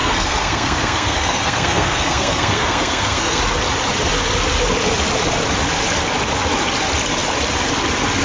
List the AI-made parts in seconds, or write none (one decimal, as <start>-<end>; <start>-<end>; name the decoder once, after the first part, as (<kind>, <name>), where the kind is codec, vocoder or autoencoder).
0.0-3.4 (codec, SNAC)